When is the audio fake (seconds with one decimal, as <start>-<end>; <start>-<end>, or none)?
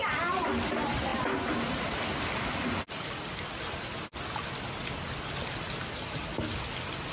none